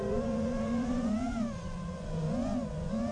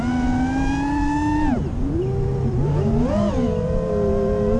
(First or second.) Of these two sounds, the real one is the second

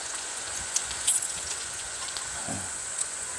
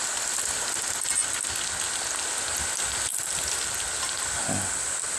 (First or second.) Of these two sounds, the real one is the second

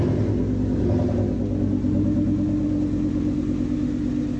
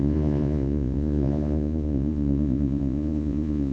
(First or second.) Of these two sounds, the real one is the first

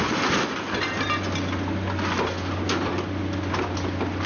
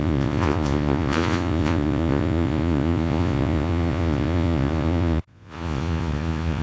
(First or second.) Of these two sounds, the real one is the first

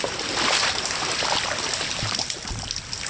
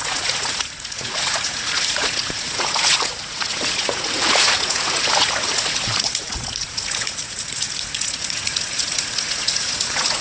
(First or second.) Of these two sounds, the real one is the first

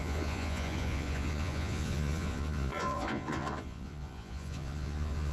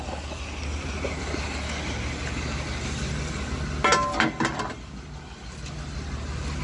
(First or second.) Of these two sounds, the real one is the second